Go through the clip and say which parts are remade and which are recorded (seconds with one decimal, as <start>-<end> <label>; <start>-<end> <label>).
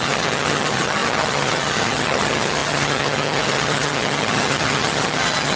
0.0-5.6 remade